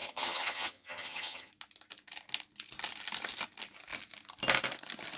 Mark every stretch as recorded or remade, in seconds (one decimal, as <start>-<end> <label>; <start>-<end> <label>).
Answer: 0.0-1.5 remade; 1.5-5.2 recorded

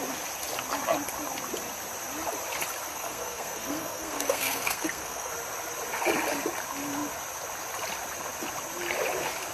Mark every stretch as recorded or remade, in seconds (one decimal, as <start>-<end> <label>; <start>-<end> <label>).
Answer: 0.0-2.9 recorded; 2.9-5.3 remade; 5.3-9.5 recorded

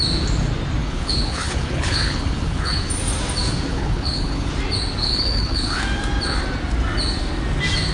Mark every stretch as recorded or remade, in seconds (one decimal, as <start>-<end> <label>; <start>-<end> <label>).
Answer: 0.0-0.8 recorded; 0.8-2.8 remade; 2.8-3.7 recorded; 3.7-4.5 remade; 4.5-5.0 recorded; 5.0-5.8 remade; 5.8-7.9 recorded

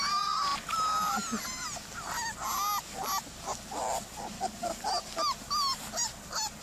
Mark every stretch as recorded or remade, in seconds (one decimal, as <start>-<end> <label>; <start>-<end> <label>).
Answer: 0.0-6.6 recorded

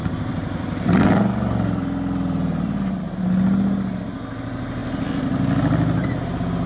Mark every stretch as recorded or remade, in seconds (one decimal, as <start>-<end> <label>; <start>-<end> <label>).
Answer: 0.0-3.2 remade; 3.2-6.7 recorded

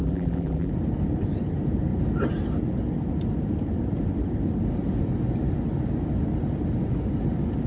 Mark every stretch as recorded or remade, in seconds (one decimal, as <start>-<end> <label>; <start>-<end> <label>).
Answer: 0.0-0.7 remade; 0.7-7.7 recorded